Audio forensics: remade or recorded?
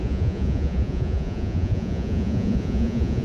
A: remade